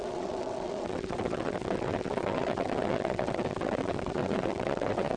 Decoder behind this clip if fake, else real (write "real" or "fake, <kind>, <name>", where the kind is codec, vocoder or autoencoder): fake, vocoder, WaveNeXt